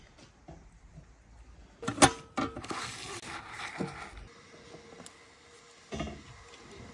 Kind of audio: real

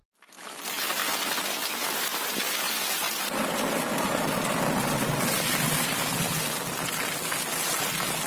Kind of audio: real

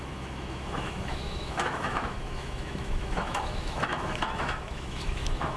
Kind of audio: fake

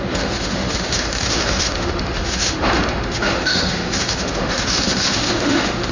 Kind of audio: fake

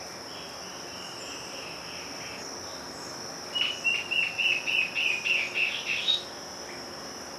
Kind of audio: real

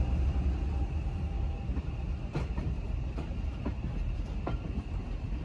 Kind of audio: real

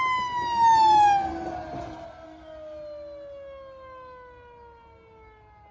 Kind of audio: real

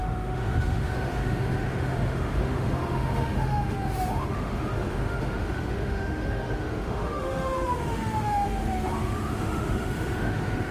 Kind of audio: fake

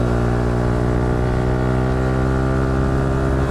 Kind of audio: real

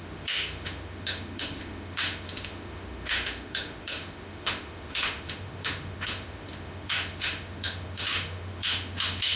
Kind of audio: fake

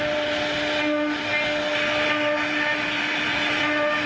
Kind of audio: real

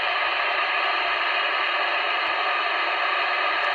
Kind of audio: real